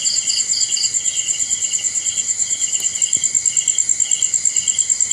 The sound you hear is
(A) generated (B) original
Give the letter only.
B